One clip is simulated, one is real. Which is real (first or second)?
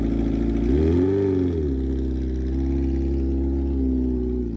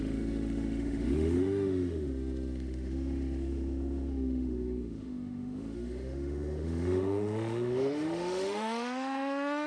first